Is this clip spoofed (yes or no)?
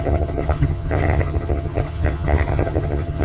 yes